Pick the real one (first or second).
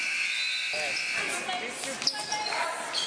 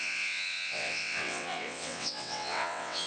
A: first